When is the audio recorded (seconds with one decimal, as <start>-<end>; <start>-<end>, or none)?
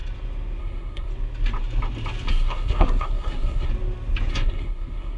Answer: 0.0-0.6; 1.1-2.3; 3.7-4.3